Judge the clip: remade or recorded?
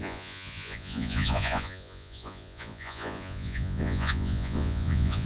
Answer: remade